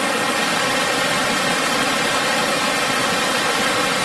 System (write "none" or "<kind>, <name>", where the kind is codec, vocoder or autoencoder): none